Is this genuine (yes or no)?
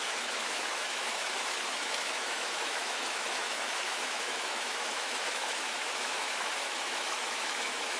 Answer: no